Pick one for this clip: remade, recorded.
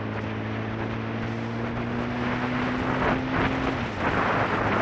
recorded